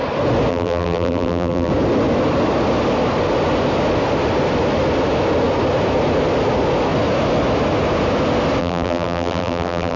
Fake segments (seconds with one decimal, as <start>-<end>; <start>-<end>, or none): 0.5-1.7; 8.6-10.0